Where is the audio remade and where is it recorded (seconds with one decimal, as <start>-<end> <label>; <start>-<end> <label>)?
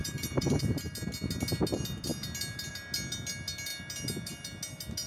0.0-0.6 remade; 0.6-5.1 recorded